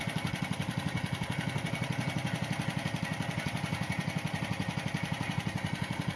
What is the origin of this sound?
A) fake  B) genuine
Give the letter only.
B